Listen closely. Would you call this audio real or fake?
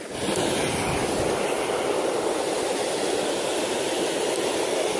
real